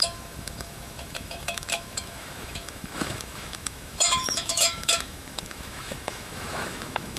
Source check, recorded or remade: remade